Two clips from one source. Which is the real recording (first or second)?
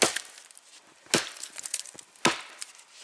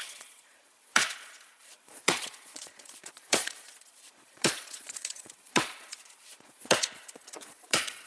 first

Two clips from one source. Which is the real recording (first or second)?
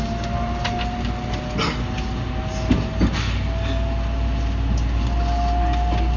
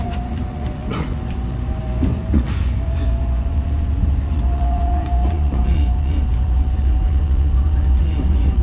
first